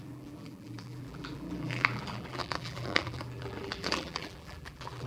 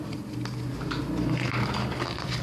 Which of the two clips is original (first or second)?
second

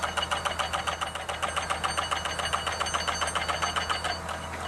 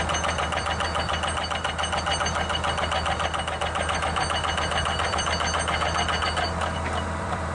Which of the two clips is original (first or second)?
first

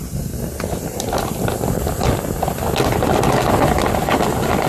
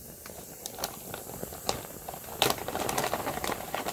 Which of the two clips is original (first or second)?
first